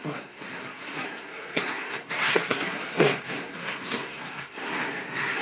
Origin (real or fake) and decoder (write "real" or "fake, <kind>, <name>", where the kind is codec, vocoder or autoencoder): fake, codec, SNAC